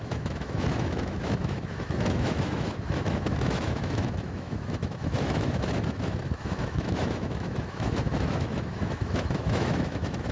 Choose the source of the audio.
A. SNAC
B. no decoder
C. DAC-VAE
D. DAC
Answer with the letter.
C